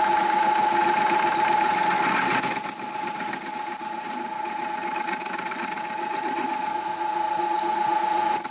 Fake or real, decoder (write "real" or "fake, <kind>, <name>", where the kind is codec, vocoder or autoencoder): real